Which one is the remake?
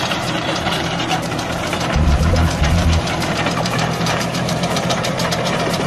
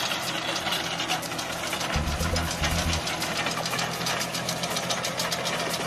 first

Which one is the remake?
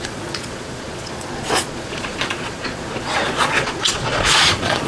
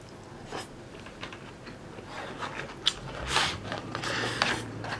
first